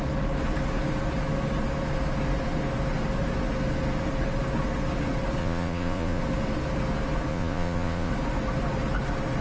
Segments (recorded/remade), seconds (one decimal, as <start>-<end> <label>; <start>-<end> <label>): 0.0-5.4 recorded; 5.4-6.2 remade; 6.2-7.3 recorded; 7.3-8.1 remade; 8.1-9.4 recorded